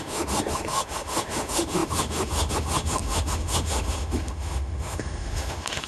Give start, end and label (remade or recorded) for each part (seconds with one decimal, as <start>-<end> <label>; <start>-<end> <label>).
0.0-5.9 remade